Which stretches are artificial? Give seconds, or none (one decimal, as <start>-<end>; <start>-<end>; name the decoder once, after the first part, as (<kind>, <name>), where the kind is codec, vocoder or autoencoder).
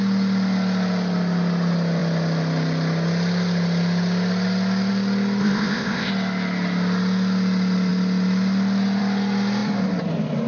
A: 5.4-6.1 (codec, ZipCodec)